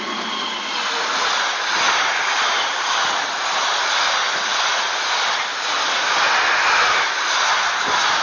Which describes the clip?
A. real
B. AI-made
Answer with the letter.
A